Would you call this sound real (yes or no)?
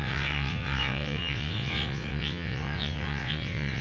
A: no